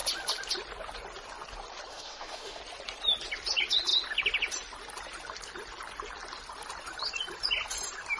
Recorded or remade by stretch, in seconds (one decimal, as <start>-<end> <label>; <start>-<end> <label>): 0.0-1.9 recorded; 1.9-2.6 remade; 2.6-8.2 recorded